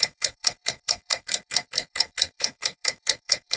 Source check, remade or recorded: remade